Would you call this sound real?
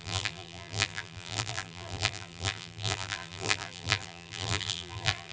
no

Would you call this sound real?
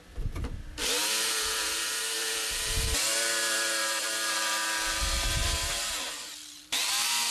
no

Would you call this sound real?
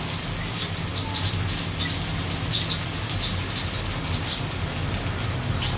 yes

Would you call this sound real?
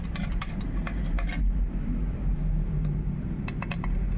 no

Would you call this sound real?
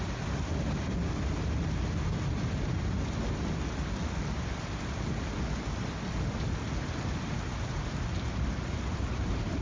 yes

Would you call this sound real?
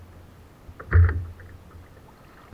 yes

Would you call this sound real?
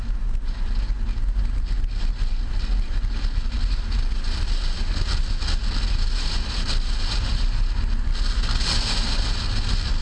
yes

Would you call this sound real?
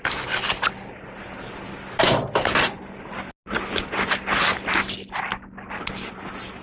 yes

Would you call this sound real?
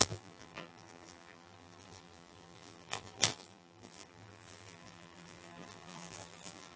no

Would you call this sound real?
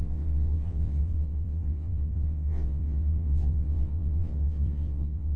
no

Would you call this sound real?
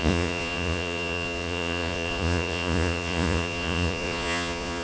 no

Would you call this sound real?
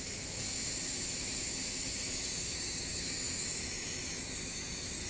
no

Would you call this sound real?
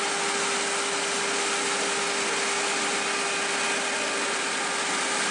yes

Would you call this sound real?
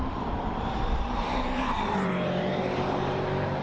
no